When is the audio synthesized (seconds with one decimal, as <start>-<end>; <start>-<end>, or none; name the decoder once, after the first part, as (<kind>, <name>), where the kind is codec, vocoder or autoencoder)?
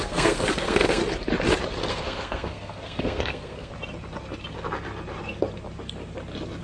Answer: 0.0-1.0 (codec, SNAC); 1.9-3.7